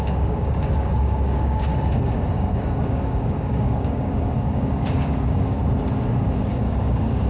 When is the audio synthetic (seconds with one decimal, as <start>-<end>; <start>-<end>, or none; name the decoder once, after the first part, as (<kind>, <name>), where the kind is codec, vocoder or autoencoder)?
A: 0.0-1.7 (codec, DAC); 2.3-5.6; 6.5-7.3